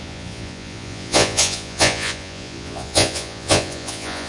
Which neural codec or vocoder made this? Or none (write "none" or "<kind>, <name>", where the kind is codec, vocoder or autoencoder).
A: vocoder, Vocos